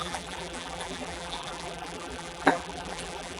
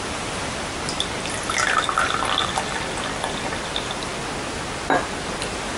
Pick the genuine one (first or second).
second